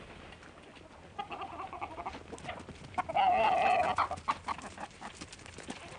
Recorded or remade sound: recorded